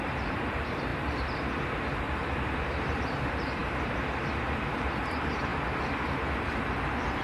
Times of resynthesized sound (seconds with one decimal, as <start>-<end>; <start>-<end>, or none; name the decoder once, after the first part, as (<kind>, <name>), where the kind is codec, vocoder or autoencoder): 0.0-0.9 (vocoder, BigVGAN v2); 1.7-7.2